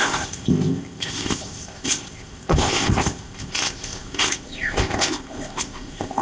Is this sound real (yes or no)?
no